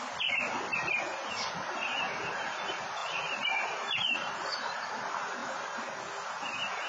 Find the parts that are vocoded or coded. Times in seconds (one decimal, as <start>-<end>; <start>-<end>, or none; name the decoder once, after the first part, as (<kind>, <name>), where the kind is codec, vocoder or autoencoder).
0.7-1.2 (vocoder, BigVGAN v2); 3.0-4.9; 5.4-6.1